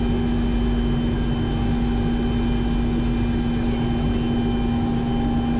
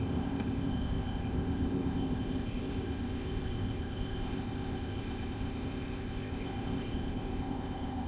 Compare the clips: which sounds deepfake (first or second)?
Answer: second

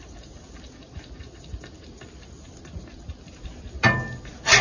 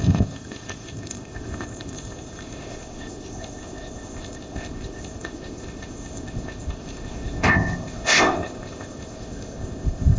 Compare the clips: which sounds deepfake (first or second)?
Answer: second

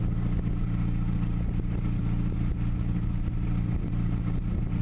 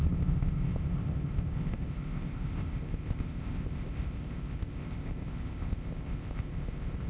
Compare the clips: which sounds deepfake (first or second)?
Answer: second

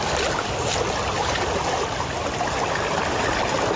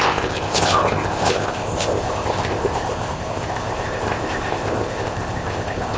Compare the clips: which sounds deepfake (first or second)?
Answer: second